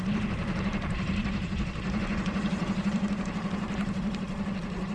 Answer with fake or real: fake